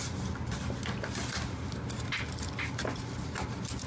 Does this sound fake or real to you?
real